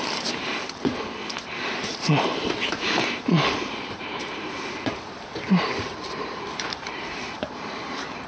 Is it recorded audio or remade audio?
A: remade